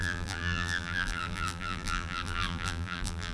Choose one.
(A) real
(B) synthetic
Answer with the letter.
B